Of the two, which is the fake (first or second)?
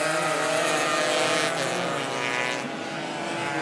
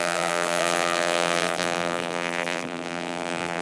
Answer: second